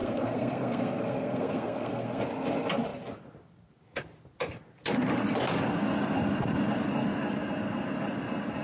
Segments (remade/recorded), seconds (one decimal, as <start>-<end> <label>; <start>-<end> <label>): 0.0-2.2 remade; 2.2-8.6 recorded